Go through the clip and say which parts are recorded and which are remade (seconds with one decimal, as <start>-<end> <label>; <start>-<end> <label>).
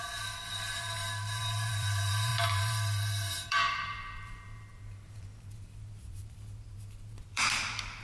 0.0-8.0 remade